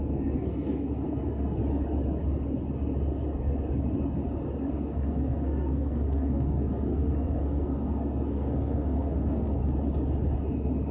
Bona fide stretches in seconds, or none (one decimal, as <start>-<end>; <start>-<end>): 1.6-4.7; 9.6-10.9